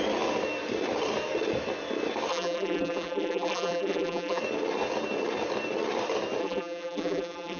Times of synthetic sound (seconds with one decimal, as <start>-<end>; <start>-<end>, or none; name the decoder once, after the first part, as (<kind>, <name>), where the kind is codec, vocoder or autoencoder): 2.3-4.4 (vocoder, BigVGAN v2); 6.4-7.6